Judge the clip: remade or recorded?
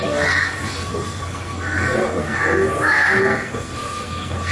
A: remade